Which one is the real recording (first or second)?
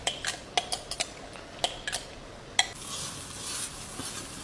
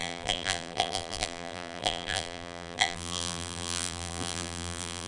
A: first